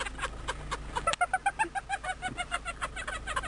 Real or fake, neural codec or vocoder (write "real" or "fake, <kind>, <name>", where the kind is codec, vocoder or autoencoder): real